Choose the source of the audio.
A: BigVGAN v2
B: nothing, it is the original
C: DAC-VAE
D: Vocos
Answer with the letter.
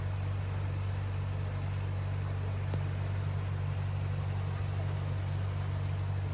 B